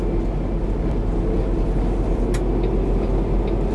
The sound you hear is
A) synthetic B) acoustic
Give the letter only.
B